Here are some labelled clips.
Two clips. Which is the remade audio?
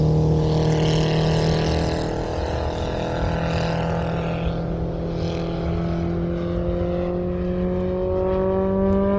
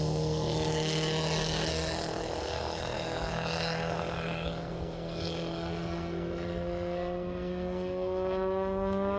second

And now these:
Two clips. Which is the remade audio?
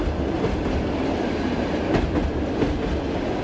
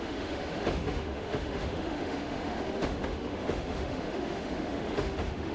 second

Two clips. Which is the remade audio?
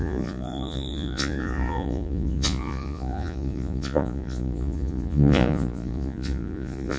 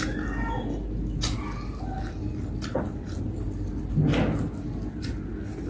first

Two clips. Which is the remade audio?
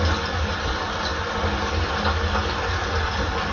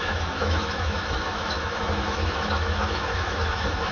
second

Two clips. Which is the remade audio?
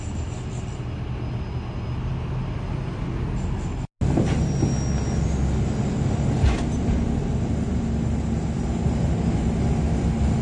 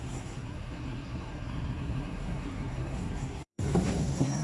second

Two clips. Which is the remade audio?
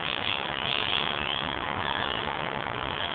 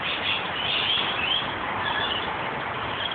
first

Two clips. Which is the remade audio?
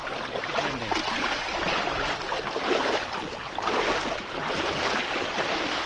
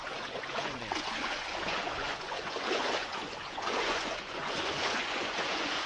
second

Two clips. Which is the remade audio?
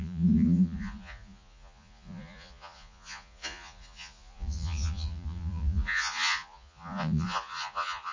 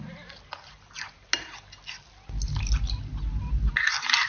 first